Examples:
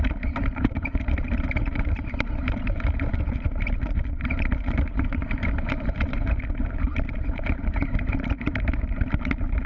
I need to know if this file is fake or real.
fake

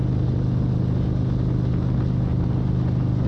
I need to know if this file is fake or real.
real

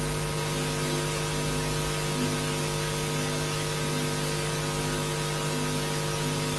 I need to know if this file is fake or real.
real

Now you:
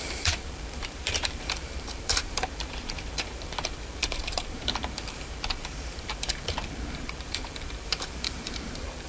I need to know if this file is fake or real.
fake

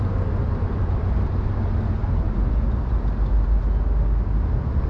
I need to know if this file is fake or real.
real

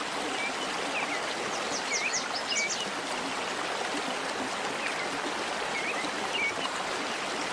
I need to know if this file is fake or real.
real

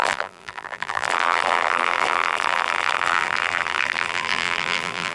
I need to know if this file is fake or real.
fake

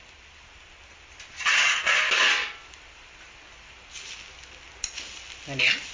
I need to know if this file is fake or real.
real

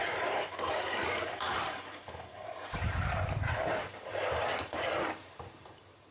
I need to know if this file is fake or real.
fake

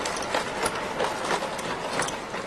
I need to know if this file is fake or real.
real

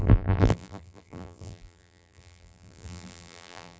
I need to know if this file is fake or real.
fake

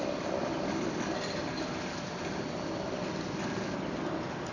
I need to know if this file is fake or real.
real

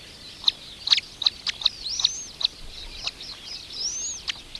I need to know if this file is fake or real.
real